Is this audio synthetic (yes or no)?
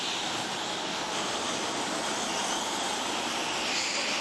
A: no